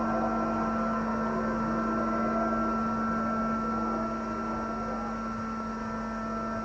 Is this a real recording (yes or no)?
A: yes